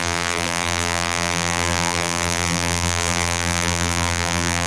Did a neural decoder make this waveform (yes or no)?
yes